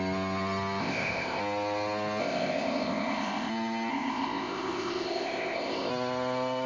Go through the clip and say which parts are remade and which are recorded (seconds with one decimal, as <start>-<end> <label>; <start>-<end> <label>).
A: 0.0-0.8 recorded; 0.8-1.4 remade; 1.4-2.2 recorded; 2.2-3.5 remade; 3.5-3.9 recorded; 3.9-5.9 remade; 5.9-6.7 recorded